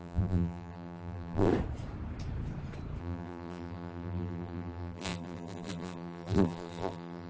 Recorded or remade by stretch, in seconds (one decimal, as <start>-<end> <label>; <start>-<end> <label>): 0.0-1.5 remade; 1.5-3.0 recorded; 3.0-7.3 remade